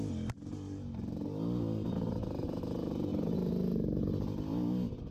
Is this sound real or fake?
real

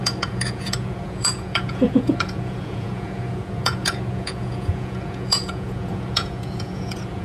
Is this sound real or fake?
fake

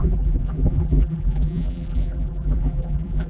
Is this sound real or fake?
fake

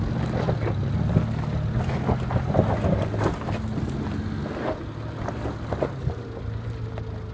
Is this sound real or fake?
real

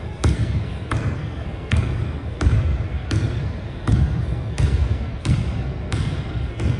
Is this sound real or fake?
fake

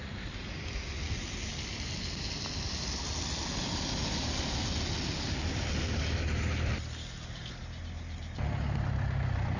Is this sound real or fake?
real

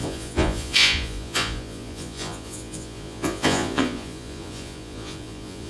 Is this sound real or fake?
fake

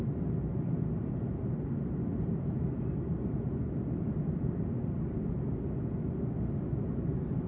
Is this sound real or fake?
real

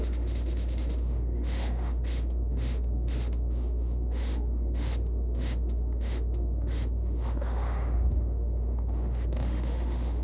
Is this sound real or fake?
fake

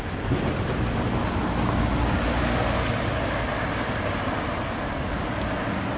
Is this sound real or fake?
real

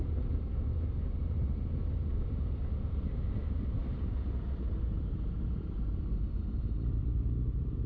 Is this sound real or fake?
fake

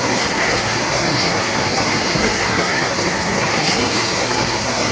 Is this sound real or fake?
fake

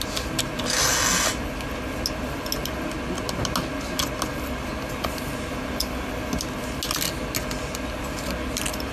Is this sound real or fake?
real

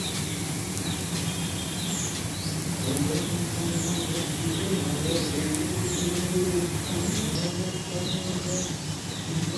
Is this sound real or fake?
fake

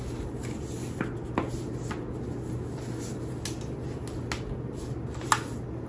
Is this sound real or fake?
real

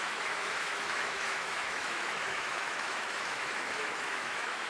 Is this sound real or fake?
fake